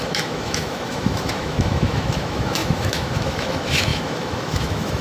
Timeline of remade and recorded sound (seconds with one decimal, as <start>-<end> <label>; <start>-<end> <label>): 0.0-5.0 remade